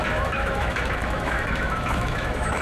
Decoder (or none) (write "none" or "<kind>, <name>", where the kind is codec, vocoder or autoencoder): autoencoder, DAC-VAE